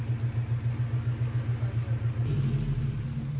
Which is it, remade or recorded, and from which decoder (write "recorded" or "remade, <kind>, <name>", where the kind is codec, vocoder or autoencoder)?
recorded